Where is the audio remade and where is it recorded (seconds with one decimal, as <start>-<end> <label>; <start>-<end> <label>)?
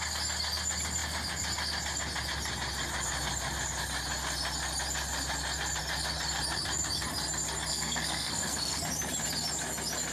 0.0-7.7 recorded; 7.7-8.8 remade; 8.8-10.1 recorded